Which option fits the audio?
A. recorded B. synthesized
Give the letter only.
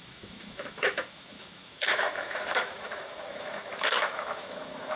B